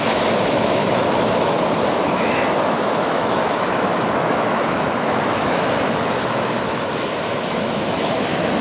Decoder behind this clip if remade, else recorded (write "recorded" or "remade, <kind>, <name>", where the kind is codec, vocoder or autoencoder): remade, autoencoder, DAC-VAE